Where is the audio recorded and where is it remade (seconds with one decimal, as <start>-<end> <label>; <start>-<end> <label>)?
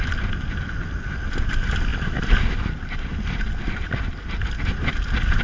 0.0-5.4 recorded